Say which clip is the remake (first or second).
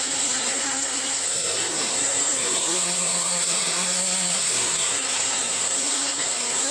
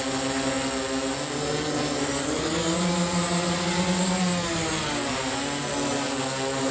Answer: first